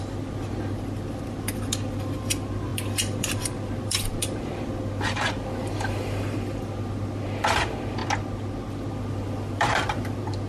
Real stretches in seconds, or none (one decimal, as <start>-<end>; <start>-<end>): 8.0-8.9